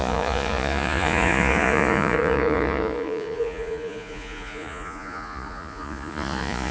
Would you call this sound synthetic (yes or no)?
yes